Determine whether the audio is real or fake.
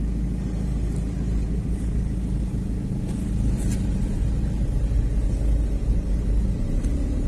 real